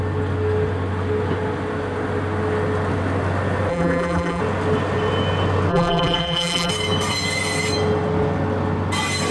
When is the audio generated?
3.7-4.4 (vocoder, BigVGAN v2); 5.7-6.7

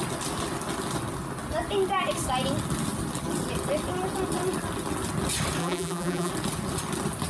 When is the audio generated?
5.6-6.3 (vocoder, BigVGAN v2)

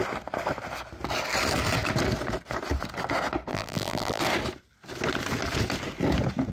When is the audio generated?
3.5-4.2 (vocoder, BigVGAN v2)

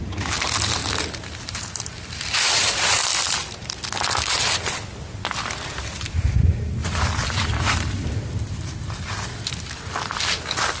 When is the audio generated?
6.8-9.6 (vocoder, BigVGAN v2)

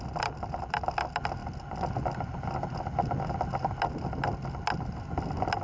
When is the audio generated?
none